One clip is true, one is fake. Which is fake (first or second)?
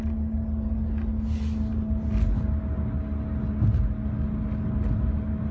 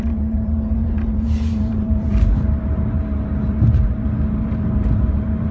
second